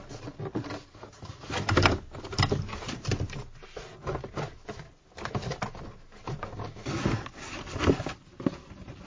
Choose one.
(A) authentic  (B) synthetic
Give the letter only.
A